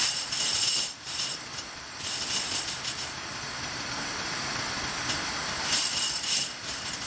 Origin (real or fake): fake